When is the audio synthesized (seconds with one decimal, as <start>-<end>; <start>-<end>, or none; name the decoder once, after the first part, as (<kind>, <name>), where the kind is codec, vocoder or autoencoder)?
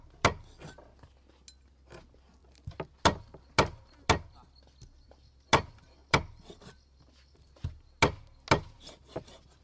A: none